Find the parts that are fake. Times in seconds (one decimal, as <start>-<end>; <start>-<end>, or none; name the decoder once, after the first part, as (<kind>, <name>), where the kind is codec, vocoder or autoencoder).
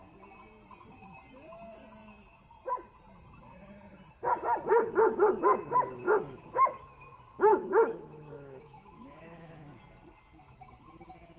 7.5-9.8 (autoencoder, DAC-VAE)